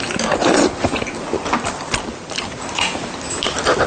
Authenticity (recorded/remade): recorded